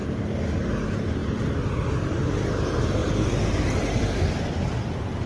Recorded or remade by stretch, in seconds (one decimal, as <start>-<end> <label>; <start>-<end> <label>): 0.0-3.0 recorded; 3.0-4.8 remade; 4.8-5.3 recorded